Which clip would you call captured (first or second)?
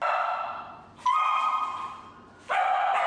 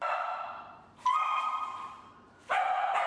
first